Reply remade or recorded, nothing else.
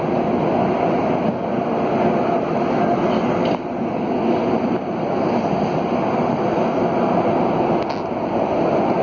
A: recorded